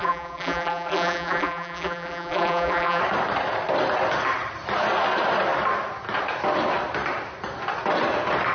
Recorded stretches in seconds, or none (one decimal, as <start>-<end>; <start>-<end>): 3.0-8.5